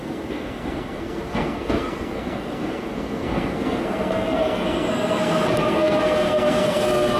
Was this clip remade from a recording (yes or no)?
yes